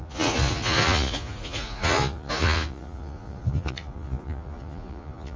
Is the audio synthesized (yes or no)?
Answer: yes